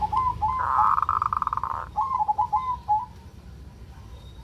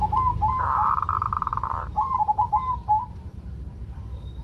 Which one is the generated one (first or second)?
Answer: second